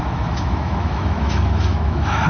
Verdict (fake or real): fake